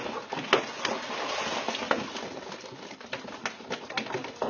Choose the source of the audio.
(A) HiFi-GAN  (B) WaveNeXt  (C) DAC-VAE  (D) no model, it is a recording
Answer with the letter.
D